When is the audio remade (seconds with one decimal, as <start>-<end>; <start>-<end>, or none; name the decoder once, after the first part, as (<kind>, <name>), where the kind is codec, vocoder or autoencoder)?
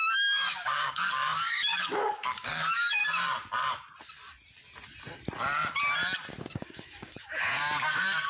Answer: 0.0-3.0 (codec, DAC); 6.4-8.3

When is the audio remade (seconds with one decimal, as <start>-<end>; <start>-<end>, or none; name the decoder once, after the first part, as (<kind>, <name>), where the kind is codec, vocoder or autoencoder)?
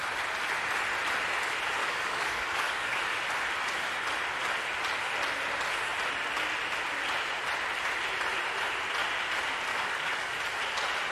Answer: 1.8-3.0 (codec, DAC); 9.7-10.3